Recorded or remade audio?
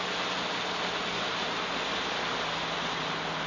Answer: recorded